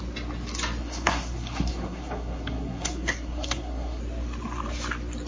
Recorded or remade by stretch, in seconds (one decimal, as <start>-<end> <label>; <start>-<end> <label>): 0.0-0.8 recorded; 0.8-4.0 remade; 4.0-5.3 recorded